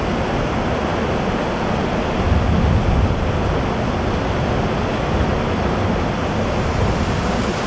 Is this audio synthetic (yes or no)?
no